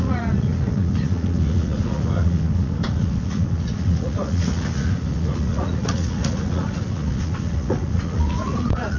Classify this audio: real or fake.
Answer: fake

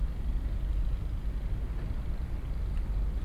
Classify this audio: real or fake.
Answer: real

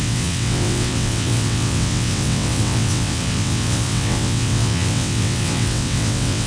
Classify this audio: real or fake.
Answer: fake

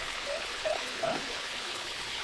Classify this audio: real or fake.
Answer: fake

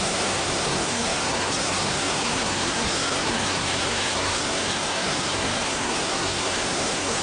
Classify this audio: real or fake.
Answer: fake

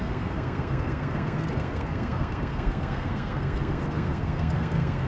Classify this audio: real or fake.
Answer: fake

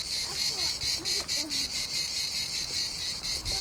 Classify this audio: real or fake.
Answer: fake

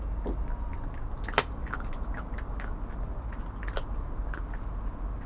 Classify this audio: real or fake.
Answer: real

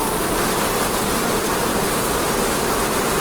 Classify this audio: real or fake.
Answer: fake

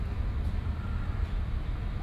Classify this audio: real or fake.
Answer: real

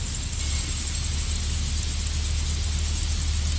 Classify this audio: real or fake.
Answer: real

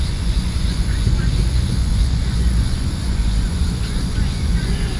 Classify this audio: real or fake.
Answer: fake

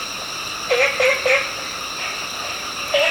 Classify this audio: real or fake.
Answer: real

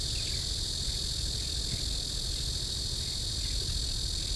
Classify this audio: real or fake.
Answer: real